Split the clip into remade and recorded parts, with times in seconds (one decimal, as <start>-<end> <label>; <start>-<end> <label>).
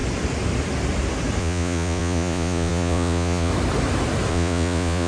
0.0-1.4 recorded; 1.4-3.5 remade; 3.5-4.3 recorded; 4.3-5.1 remade